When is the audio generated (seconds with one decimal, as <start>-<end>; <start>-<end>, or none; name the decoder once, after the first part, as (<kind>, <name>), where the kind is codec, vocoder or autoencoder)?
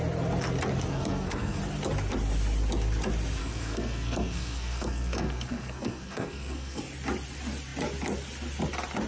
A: 0.9-1.6 (codec, SNAC); 3.4-6.8